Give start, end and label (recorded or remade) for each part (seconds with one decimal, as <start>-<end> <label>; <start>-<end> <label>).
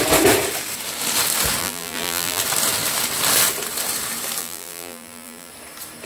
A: 0.0-1.6 recorded; 1.6-2.4 remade; 2.4-4.4 recorded; 4.4-5.5 remade; 5.5-6.1 recorded